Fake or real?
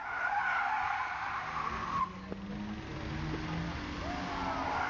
real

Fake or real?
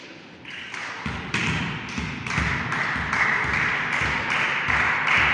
real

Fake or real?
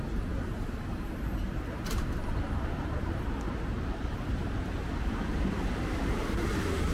fake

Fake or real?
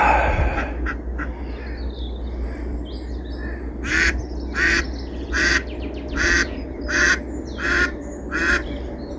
real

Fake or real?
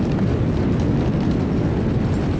real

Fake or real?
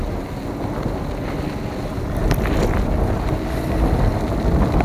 real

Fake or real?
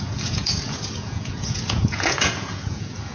fake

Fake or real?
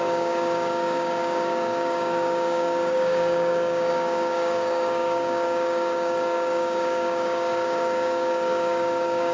fake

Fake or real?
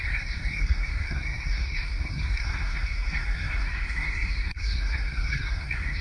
fake